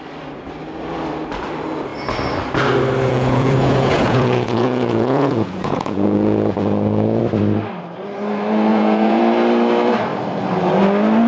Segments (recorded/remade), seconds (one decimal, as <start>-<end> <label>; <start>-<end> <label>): 0.0-3.1 recorded; 3.1-7.2 remade; 7.2-8.7 recorded; 8.7-9.2 remade; 9.2-11.3 recorded